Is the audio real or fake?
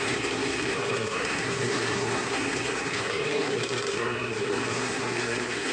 fake